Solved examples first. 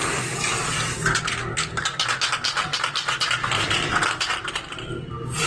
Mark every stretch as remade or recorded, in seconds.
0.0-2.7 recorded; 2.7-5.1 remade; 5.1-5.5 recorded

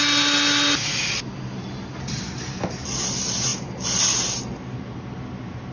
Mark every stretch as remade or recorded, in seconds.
0.0-5.7 recorded